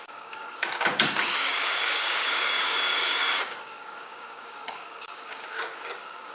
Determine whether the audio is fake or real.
fake